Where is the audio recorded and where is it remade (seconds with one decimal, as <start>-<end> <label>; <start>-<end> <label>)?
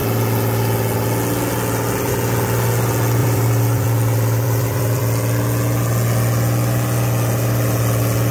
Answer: 0.0-3.2 recorded; 3.2-5.0 remade; 5.0-8.3 recorded